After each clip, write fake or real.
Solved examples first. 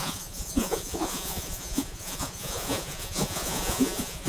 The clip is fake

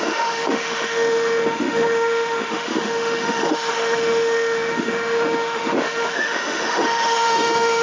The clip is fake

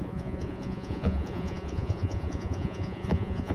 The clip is fake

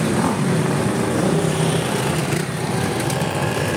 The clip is fake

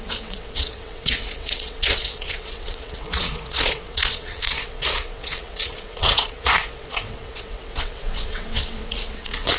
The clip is fake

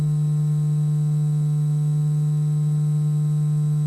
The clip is real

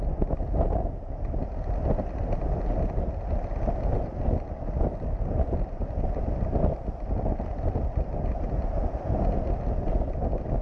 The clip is real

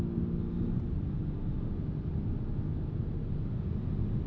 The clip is real